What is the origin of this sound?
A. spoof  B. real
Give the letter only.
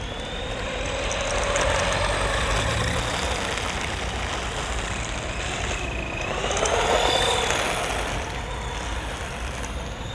B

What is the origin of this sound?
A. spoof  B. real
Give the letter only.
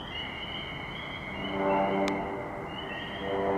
B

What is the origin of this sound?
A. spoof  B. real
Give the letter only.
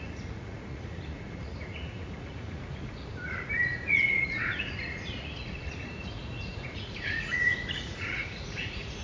A